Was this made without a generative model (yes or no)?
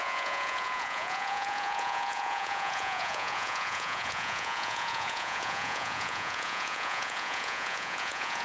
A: no